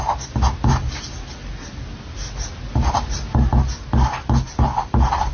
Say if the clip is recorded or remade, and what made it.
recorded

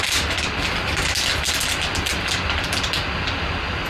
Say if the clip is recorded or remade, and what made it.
recorded